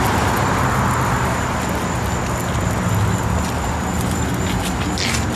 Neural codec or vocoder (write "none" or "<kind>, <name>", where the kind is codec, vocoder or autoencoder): none